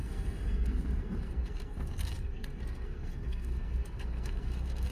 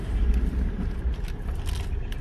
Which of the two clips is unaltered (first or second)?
second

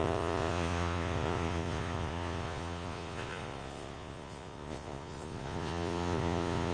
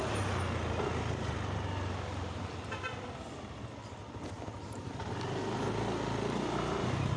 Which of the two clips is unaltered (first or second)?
second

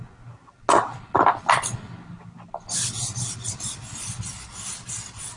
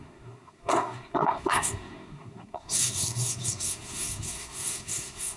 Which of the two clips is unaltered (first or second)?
first